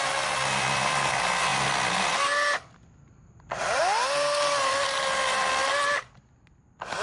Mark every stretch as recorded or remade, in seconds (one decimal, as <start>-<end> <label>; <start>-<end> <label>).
0.0-7.0 recorded